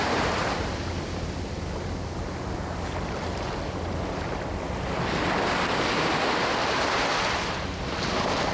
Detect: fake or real real